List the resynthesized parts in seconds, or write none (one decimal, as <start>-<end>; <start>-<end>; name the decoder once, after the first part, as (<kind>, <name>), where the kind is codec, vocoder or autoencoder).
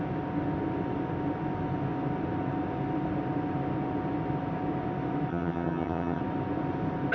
5.3-6.2 (vocoder, HiFi-GAN)